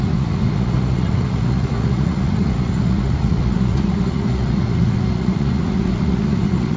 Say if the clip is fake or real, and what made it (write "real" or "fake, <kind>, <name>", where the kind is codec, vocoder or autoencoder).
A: fake, vocoder, Vocos